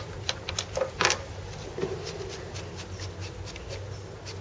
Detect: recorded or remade recorded